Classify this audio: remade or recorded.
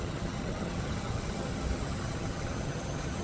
remade